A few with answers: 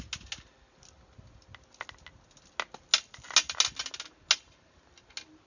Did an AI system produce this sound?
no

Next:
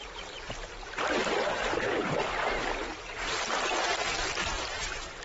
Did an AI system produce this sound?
yes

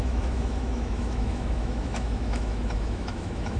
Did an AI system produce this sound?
yes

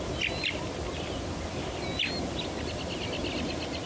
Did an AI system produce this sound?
no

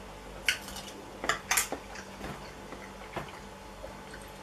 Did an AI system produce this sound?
no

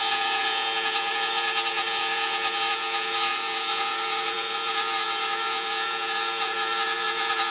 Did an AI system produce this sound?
yes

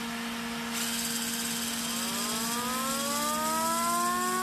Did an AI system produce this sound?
no